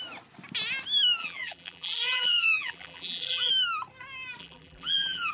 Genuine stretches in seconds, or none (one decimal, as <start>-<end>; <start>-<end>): 0.0-1.2; 3.5-4.4